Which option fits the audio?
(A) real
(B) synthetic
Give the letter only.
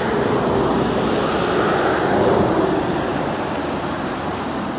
A